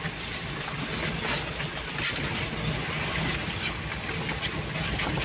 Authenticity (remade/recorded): recorded